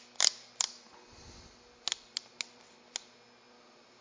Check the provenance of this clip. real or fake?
real